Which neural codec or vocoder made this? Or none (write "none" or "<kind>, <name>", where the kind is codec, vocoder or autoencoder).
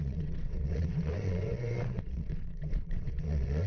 vocoder, WaveNeXt